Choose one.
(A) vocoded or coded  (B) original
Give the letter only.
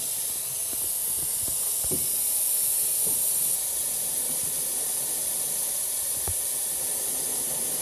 B